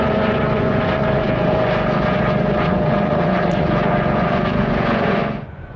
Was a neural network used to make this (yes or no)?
yes